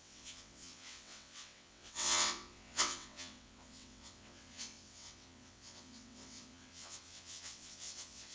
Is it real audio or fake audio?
fake